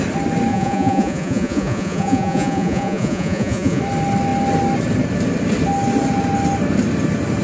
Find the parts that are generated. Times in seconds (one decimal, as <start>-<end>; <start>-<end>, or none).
0.5-3.8